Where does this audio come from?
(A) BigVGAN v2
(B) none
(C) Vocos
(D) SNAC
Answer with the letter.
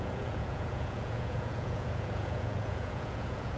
C